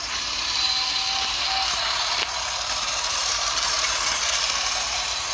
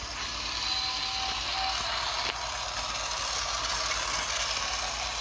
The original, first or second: second